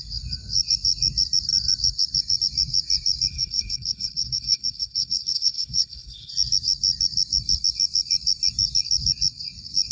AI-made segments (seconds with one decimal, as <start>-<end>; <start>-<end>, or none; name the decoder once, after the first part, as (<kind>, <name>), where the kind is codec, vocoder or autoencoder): 3.3-6.3 (codec, HILCodec)